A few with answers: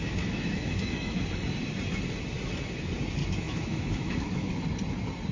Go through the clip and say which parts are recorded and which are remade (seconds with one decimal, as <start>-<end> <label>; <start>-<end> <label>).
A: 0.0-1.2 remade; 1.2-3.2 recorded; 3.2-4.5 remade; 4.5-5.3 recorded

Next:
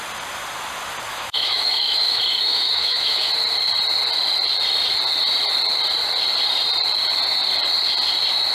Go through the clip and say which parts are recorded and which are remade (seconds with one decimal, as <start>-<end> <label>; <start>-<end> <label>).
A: 0.0-1.1 recorded; 1.1-3.3 remade; 3.3-8.5 recorded

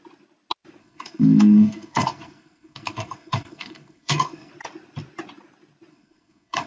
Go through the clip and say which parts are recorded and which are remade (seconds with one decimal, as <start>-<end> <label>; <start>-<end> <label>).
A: 0.0-0.8 recorded; 0.8-4.5 remade; 4.5-5.9 recorded; 5.9-6.7 remade